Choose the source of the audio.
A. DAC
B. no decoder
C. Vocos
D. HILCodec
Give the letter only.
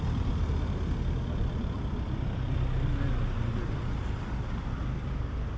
B